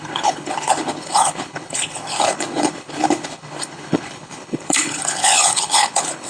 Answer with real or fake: fake